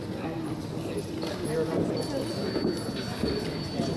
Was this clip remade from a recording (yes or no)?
no